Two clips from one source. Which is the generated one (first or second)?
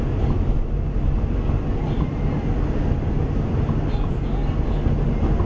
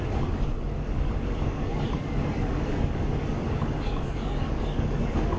second